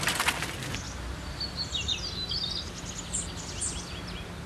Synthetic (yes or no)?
no